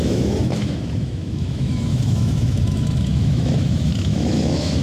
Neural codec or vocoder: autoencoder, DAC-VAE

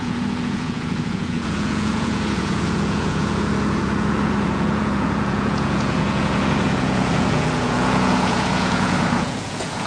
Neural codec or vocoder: vocoder, Vocos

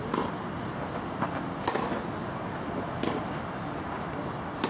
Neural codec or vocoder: none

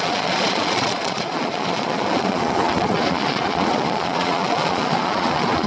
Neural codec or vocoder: vocoder, Vocos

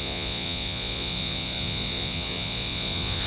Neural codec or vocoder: vocoder, Vocos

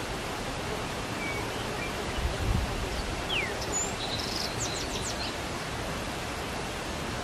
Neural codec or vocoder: none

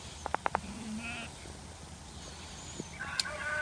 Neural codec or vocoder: none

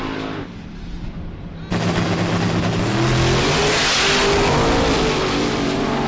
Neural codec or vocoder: none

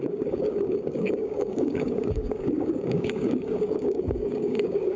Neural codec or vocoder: codec, DAC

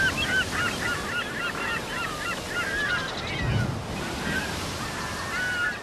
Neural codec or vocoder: none